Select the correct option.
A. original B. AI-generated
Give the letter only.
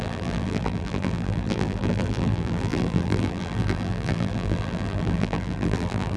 B